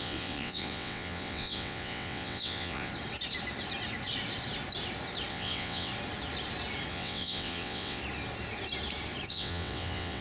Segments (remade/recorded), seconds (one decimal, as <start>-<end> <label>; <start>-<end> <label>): 0.0-2.9 remade; 2.9-5.3 recorded; 5.3-5.9 remade; 5.9-6.9 recorded; 6.9-8.0 remade; 8.0-9.3 recorded; 9.3-10.2 remade